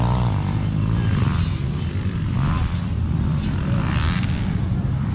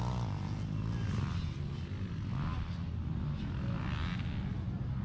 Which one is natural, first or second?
second